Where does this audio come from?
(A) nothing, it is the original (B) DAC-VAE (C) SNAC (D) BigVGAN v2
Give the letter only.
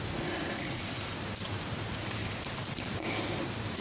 A